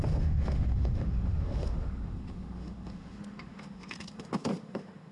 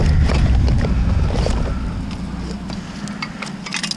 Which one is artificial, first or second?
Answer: first